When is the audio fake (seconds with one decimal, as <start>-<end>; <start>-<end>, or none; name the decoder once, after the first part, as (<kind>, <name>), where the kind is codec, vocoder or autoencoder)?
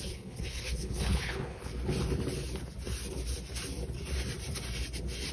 0.0-1.7 (codec, HILCodec)